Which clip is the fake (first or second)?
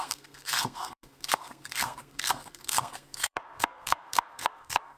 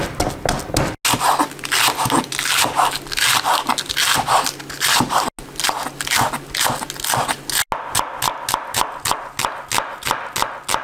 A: first